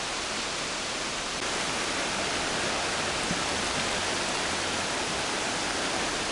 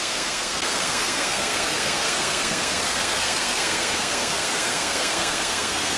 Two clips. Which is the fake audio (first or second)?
second